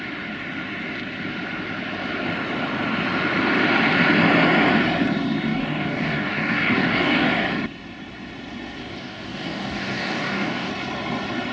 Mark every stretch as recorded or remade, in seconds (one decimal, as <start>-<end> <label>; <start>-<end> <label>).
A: 0.0-5.5 recorded; 5.5-7.3 remade; 7.3-8.8 recorded; 8.8-10.7 remade; 10.7-11.5 recorded